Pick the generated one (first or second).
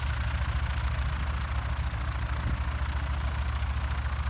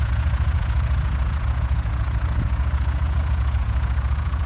second